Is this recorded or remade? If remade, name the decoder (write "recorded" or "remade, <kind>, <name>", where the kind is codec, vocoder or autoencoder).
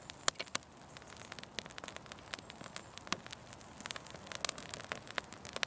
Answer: recorded